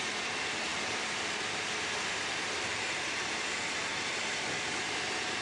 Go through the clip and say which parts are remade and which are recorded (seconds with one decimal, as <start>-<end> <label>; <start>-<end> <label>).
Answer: 0.0-0.7 remade; 0.7-3.6 recorded; 3.6-5.4 remade

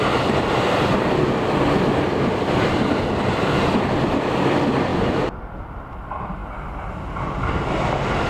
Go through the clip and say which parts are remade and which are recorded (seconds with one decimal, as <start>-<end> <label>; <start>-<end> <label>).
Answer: 0.0-8.3 recorded

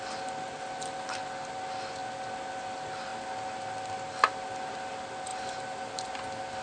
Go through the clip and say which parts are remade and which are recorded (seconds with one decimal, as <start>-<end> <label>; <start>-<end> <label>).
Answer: 0.0-6.6 recorded

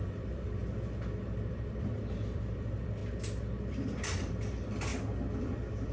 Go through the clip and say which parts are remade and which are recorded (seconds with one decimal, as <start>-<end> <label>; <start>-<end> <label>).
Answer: 0.0-0.6 remade; 0.6-1.5 recorded; 1.5-3.0 remade; 3.0-3.6 recorded; 3.6-4.9 remade; 4.9-5.4 recorded; 5.4-5.9 remade

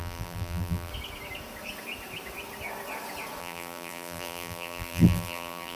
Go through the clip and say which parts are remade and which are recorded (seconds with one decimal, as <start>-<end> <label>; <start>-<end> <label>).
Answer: 0.0-0.9 remade; 0.9-3.4 recorded; 3.4-5.7 remade

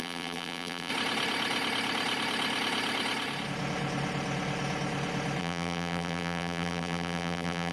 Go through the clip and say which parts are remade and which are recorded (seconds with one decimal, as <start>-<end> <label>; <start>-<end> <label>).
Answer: 0.0-0.9 remade; 0.9-5.4 recorded; 5.4-7.7 remade